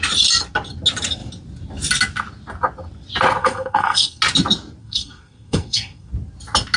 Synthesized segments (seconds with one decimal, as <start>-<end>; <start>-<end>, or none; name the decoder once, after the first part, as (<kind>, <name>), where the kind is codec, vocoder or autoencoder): 3.4-4.2 (codec, SNAC); 4.8-6.1